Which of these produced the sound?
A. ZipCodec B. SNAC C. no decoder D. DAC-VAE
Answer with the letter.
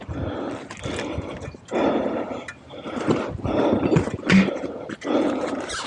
C